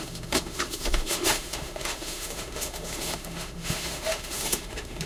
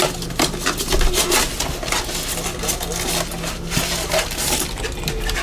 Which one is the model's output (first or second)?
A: first